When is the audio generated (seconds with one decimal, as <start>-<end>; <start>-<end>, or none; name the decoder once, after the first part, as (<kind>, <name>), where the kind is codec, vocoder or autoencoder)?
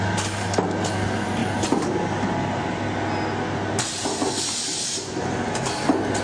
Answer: none